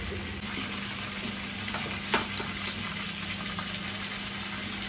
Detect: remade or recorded recorded